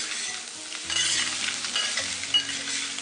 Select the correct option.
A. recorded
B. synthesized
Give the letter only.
A